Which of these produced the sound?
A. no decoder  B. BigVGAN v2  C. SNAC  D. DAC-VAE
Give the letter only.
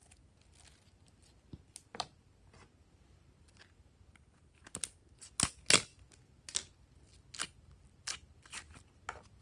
A